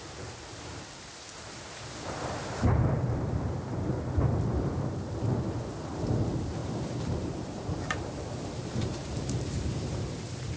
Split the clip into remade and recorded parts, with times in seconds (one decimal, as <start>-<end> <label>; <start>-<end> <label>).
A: 0.0-6.6 recorded; 6.6-10.6 remade